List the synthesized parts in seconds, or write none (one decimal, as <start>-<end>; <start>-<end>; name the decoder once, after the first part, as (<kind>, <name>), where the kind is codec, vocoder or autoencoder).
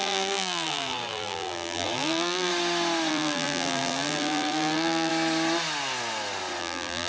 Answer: 0.0-2.5 (vocoder, BigVGAN v2); 3.1-5.1; 6.6-7.1